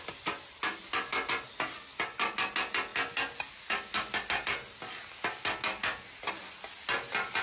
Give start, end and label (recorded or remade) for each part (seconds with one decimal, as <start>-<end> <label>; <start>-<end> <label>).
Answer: 0.0-7.4 recorded